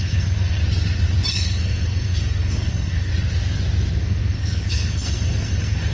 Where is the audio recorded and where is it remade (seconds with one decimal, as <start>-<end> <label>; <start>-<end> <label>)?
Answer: 0.0-0.6 remade; 0.6-1.3 recorded; 1.3-3.1 remade; 3.1-4.0 recorded; 4.0-5.9 remade